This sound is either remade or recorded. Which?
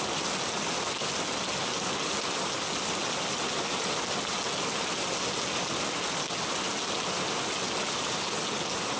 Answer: recorded